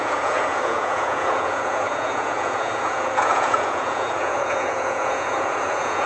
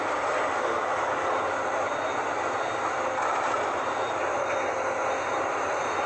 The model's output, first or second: first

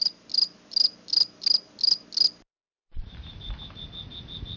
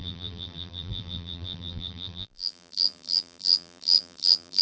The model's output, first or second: second